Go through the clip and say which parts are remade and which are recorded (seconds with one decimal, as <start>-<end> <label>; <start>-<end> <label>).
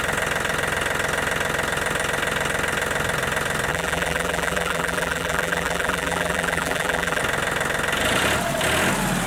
0.0-3.7 recorded; 3.7-7.2 remade; 7.2-9.3 recorded